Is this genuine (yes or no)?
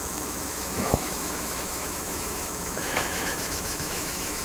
no